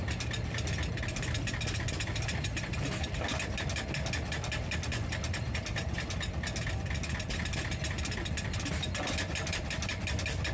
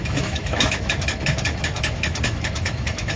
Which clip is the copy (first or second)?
second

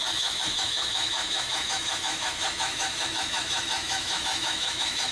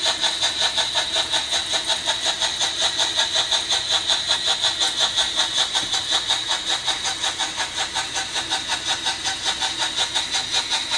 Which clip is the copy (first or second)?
first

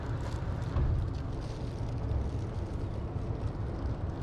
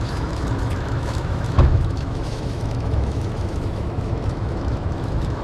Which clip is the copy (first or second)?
second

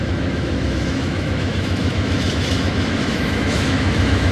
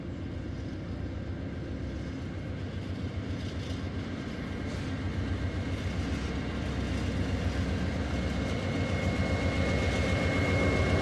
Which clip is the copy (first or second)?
first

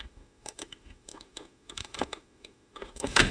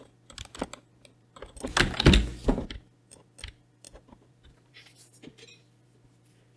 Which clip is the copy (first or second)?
first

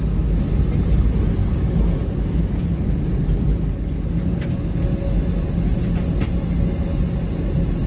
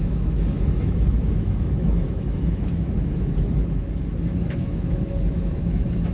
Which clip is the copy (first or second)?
second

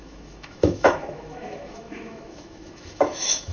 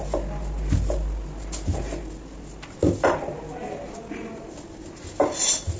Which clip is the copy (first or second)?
first